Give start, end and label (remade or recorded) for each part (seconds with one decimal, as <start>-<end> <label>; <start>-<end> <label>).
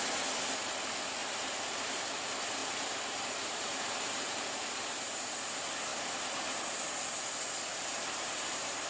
0.0-1.2 recorded; 1.2-2.0 remade; 2.0-2.6 recorded; 2.6-5.4 remade; 5.4-5.9 recorded; 5.9-6.8 remade; 6.8-7.7 recorded; 7.7-8.9 remade